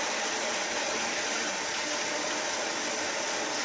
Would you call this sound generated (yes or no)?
no